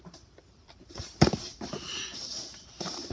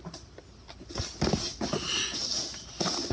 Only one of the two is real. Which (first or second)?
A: second